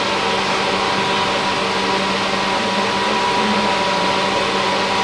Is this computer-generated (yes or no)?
no